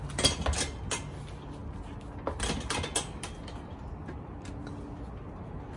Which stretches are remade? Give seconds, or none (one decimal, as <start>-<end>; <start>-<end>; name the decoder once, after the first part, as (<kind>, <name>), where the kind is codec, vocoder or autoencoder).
none